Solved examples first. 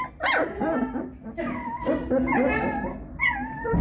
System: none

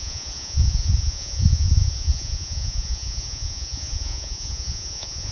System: vocoder, Vocos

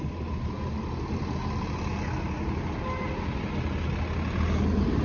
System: none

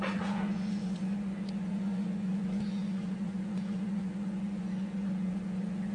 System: vocoder, Vocos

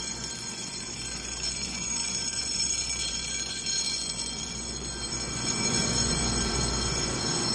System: vocoder, Vocos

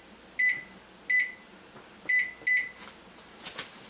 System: none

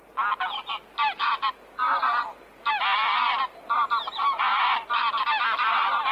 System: none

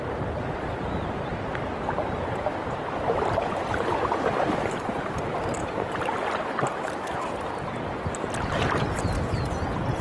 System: none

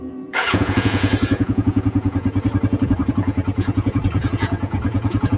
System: vocoder, Vocos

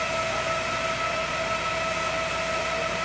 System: none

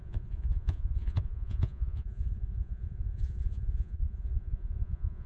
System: vocoder, Vocos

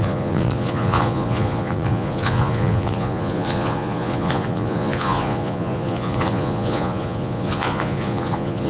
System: vocoder, Vocos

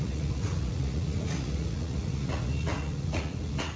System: vocoder, Vocos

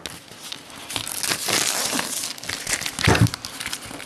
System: none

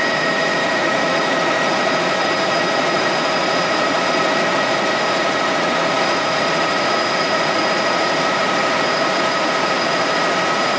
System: vocoder, Vocos